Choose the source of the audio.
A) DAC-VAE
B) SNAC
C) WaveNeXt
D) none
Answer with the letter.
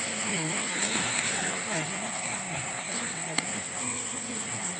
B